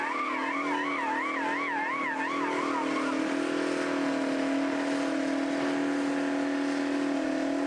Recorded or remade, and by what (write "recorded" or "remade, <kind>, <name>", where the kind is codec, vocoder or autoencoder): recorded